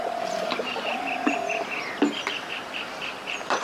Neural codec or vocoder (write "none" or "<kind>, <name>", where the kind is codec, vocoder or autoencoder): vocoder, BigVGAN v2